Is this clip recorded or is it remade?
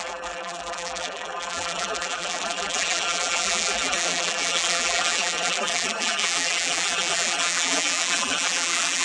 remade